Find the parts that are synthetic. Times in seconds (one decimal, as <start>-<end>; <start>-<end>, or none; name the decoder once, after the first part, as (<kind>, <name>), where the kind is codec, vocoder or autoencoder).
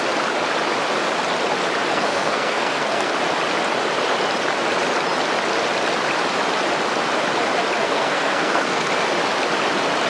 1.9-3.1 (codec, SNAC); 7.8-8.9